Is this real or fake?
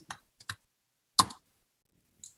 real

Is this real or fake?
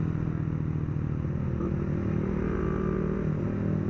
real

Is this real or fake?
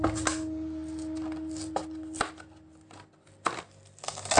real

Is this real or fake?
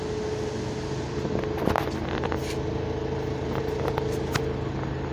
real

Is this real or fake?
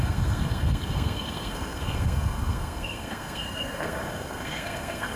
fake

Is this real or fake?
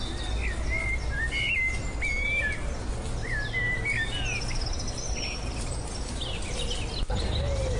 real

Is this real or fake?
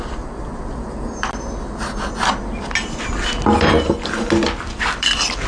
real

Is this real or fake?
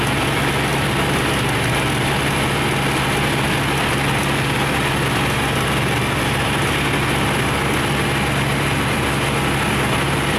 real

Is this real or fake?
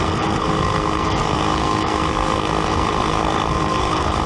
fake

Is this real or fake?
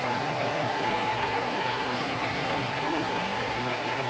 fake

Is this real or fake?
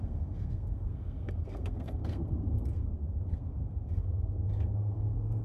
fake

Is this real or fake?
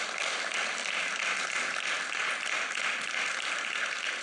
real